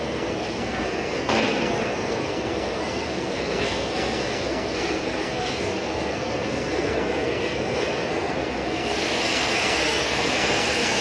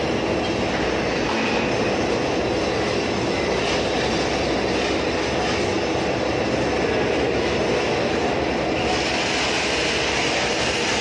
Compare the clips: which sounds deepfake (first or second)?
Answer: first